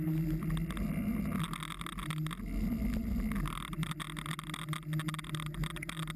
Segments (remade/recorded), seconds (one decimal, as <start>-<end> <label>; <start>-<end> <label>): 0.0-6.2 recorded